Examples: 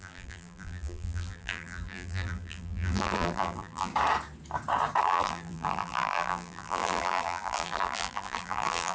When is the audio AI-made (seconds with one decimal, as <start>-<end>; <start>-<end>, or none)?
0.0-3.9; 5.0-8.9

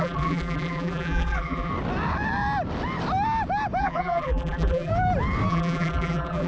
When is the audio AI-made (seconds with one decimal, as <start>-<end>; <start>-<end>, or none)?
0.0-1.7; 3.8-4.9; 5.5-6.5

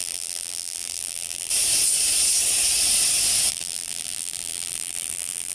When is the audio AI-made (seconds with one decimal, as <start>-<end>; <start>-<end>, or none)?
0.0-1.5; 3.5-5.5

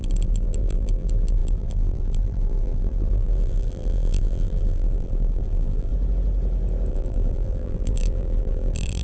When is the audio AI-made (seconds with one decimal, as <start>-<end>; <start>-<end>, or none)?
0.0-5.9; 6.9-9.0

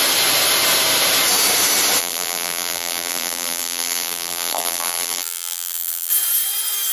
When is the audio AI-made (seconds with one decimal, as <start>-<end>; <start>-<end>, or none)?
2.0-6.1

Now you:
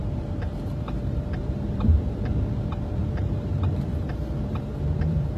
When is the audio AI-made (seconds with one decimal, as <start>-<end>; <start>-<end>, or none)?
0.0-2.3; 3.1-5.4

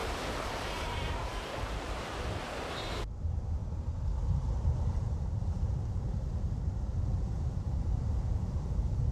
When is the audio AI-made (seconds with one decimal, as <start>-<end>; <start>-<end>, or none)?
0.0-3.6; 4.6-9.1